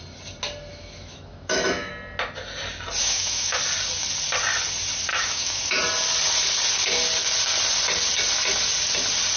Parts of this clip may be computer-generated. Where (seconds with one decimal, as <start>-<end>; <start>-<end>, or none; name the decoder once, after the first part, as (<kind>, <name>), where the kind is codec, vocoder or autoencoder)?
0.7-1.9 (autoencoder, DAC-VAE); 3.0-3.6; 5.1-5.6